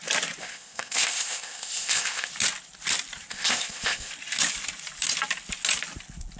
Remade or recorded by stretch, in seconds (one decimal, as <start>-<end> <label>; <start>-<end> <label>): 0.0-0.4 recorded; 0.4-2.3 remade; 2.3-3.3 recorded; 3.3-4.1 remade; 4.1-6.4 recorded